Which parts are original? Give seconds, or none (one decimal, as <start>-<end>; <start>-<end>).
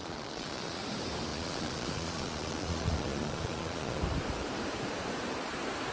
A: 0.8-1.3; 4.0-5.9